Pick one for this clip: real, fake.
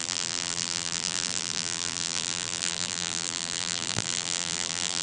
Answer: fake